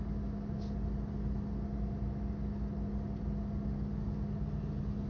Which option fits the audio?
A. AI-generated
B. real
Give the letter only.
B